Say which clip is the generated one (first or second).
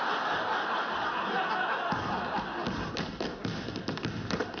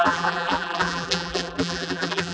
second